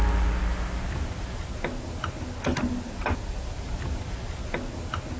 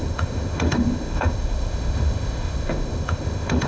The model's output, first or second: second